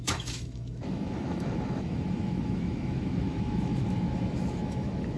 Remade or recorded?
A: remade